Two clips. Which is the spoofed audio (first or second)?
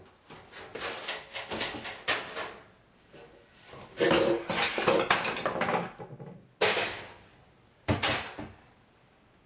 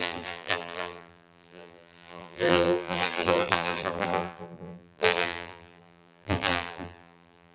second